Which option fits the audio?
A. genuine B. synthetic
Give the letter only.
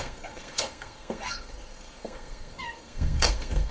B